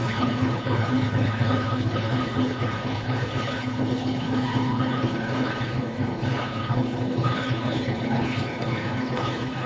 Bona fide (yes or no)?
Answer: no